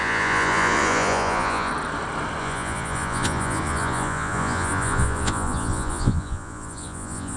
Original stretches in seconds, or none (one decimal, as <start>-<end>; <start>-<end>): 1.7-2.4